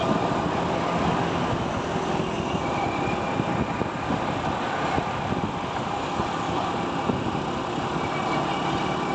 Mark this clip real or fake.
real